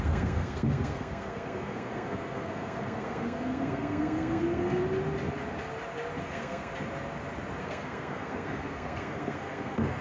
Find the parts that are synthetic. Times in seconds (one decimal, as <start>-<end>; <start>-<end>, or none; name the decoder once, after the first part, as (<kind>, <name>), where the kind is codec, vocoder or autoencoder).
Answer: 0.0-4.8 (codec, SNAC); 6.2-6.7; 7.6-10.0